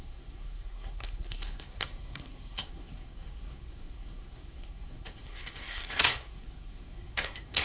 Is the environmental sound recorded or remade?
remade